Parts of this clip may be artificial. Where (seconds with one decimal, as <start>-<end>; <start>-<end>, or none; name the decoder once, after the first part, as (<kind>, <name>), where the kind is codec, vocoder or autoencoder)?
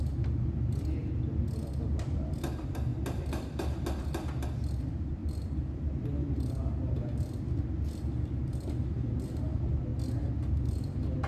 none